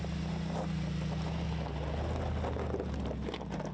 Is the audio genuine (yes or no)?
yes